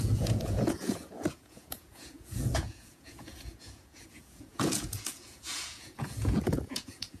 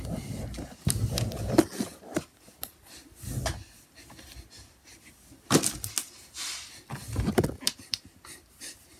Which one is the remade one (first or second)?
first